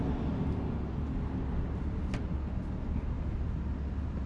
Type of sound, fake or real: real